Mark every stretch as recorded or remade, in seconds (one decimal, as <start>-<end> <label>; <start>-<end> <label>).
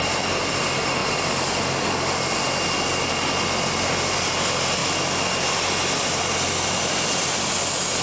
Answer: 0.0-8.0 recorded